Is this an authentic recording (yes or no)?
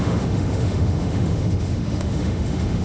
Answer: no